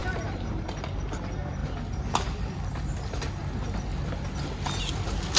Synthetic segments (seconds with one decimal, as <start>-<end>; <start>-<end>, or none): 0.0-0.8